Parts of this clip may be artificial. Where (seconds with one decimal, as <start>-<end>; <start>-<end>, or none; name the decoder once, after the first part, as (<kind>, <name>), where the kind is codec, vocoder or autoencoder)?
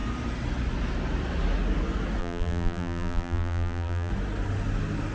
2.2-4.1 (vocoder, BigVGAN v2)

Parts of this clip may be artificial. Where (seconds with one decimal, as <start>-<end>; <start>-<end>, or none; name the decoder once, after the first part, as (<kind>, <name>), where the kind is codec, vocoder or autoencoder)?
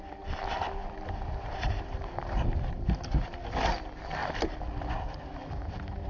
0.8-2.0 (vocoder, BigVGAN v2); 4.2-6.1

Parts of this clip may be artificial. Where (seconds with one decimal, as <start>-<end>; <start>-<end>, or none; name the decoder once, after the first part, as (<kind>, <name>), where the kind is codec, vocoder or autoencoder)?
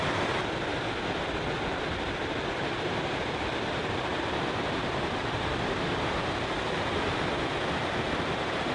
4.1-5.2 (vocoder, BigVGAN v2)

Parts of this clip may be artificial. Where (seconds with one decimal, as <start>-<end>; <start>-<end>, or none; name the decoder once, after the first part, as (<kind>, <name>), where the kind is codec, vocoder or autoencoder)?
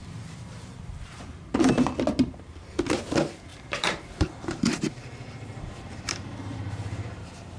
0.0-0.8 (vocoder, BigVGAN v2); 3.5-7.6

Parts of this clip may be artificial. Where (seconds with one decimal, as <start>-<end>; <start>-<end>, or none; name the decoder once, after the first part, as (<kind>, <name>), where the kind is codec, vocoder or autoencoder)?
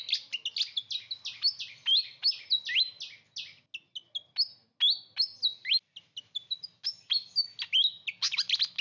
none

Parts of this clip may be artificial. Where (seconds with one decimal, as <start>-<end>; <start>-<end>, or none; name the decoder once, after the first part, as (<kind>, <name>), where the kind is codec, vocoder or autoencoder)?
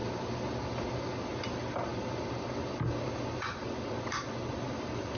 1.4-1.9 (vocoder, BigVGAN v2); 4.5-5.2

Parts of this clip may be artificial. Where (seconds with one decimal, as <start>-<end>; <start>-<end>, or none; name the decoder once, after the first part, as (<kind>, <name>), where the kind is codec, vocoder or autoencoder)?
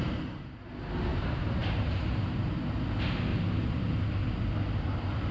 0.0-0.7 (vocoder, BigVGAN v2); 1.1-2.8; 3.3-3.9